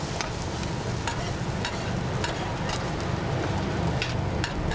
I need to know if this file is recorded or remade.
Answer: recorded